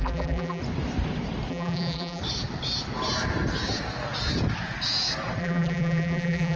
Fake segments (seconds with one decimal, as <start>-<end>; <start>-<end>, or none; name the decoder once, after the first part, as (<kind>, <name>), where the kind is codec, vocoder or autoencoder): 0.0-0.6 (vocoder, BigVGAN v2); 1.5-2.2; 5.4-6.6